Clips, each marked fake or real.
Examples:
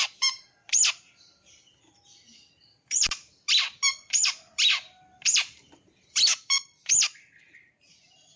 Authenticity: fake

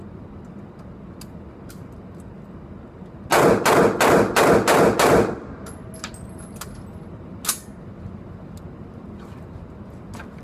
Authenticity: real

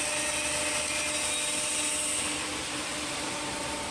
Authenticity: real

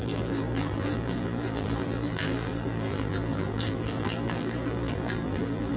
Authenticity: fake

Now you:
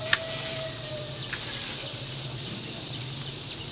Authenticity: fake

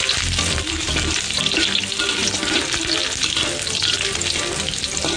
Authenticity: real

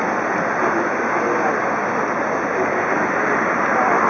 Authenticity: real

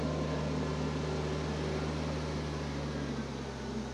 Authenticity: real